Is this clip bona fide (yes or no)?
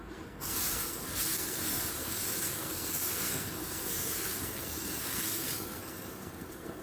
no